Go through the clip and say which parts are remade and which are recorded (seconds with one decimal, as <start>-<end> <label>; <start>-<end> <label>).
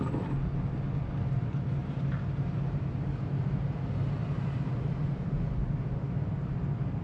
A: 0.0-1.8 recorded; 1.8-5.9 remade; 5.9-7.0 recorded